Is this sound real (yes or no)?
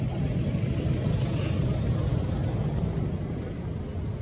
yes